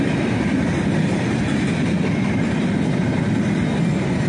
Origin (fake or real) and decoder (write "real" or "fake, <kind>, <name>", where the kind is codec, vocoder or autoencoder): real